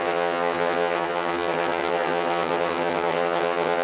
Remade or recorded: remade